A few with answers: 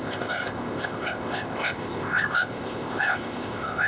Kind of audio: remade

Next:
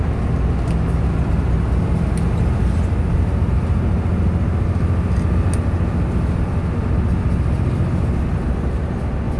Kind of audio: recorded